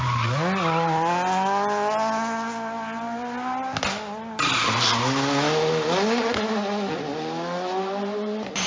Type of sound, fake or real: real